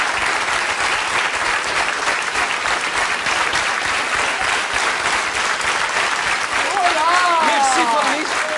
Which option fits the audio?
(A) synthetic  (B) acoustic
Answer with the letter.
B